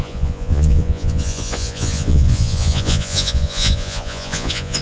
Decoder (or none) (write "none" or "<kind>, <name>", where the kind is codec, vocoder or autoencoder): vocoder, Vocos